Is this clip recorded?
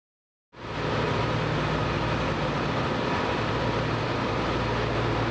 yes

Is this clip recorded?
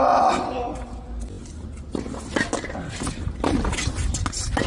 yes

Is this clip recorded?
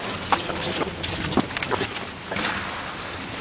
yes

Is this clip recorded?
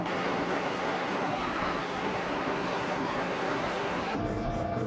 no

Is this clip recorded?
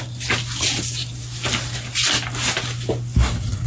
yes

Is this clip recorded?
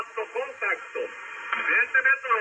yes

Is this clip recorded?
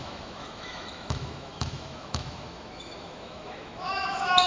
no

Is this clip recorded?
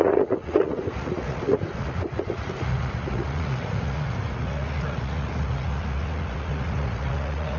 no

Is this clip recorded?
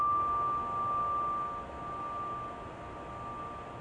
yes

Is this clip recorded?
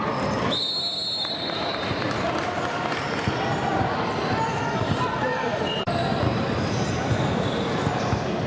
yes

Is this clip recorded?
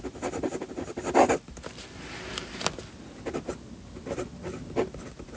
yes